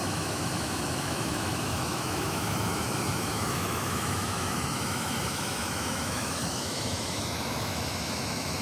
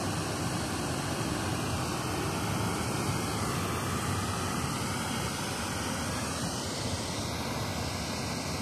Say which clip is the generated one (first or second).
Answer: first